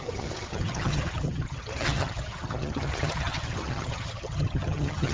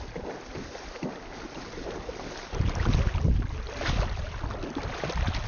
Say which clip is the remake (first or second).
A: first